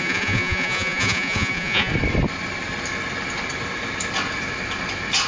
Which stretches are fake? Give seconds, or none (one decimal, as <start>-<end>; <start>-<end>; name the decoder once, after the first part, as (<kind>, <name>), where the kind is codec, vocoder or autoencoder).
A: 0.0-1.9 (vocoder, Vocos)